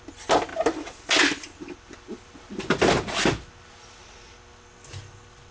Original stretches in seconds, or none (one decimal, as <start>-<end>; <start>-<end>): 0.0-5.5